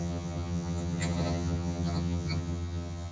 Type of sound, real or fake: fake